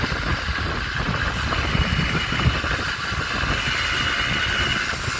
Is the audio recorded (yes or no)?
yes